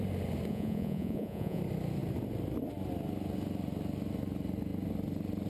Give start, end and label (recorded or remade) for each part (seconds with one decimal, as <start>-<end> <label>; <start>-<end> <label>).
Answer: 0.0-0.5 recorded; 0.5-1.6 remade; 1.6-5.5 recorded